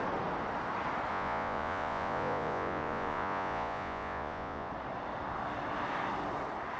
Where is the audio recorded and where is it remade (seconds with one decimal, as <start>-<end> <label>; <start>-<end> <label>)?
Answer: 0.0-1.1 recorded; 1.1-4.7 remade; 4.7-6.8 recorded

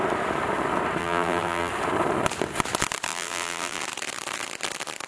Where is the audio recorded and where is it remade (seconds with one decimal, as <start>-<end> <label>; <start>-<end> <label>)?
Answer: 0.0-1.0 recorded; 1.0-1.7 remade; 1.7-3.1 recorded; 3.1-3.8 remade; 3.8-5.1 recorded

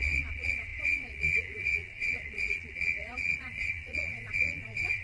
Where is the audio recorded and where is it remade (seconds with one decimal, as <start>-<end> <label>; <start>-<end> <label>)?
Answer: 0.0-5.0 remade

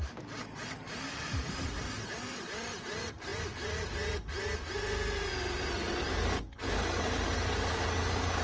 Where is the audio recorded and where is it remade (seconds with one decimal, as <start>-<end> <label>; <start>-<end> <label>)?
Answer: 0.0-8.4 recorded

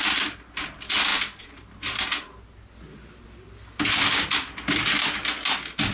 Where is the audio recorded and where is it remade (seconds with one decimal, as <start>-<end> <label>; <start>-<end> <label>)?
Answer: 0.0-5.9 recorded

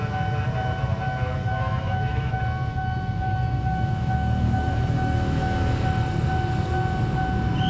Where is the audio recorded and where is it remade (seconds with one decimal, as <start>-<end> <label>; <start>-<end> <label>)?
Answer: 0.0-1.4 recorded; 1.4-2.3 remade; 2.3-2.7 recorded; 2.7-5.7 remade; 5.7-7.7 recorded